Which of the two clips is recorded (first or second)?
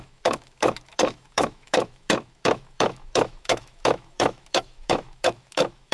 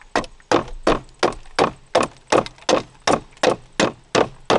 second